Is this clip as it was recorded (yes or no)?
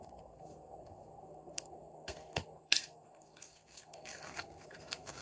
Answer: no